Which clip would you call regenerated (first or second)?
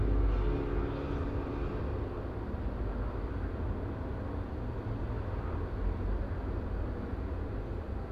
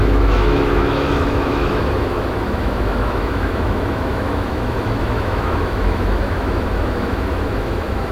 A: second